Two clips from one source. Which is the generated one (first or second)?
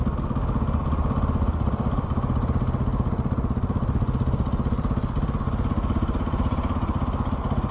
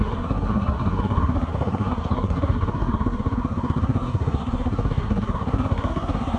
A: second